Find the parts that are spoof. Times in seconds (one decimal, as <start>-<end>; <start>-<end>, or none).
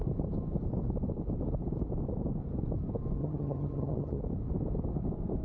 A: 3.2-4.2